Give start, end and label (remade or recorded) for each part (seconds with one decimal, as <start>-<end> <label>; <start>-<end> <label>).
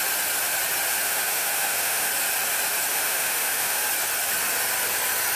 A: 0.0-1.0 recorded; 1.0-2.1 remade; 2.1-2.9 recorded; 2.9-3.8 remade; 3.8-5.4 recorded